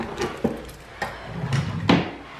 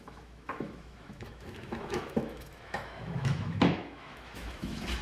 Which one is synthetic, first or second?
second